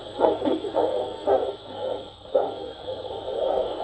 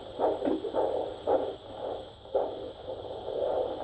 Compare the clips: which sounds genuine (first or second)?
second